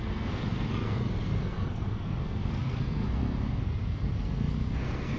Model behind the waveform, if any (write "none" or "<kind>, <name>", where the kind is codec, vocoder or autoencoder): codec, SNAC